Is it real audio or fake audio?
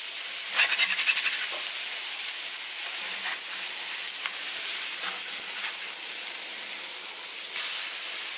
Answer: real